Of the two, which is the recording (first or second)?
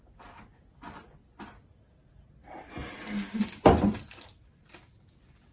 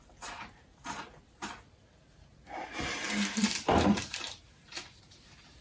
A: first